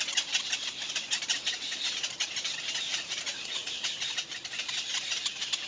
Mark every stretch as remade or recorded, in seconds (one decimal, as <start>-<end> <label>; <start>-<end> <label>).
0.0-2.9 recorded; 2.9-3.7 remade; 3.7-5.7 recorded